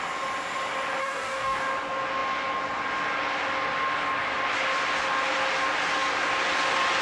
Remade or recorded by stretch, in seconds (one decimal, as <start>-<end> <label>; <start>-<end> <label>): 0.0-1.0 recorded; 1.0-1.6 remade; 1.6-7.0 recorded